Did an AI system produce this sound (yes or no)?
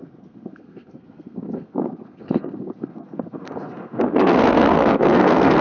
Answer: yes